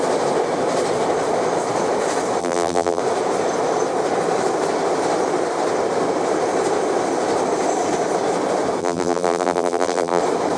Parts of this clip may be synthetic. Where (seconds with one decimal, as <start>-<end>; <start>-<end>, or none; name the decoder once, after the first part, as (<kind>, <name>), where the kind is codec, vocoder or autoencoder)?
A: 2.4-3.0 (vocoder, BigVGAN v2); 8.8-10.2